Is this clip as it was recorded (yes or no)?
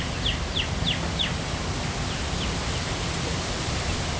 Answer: yes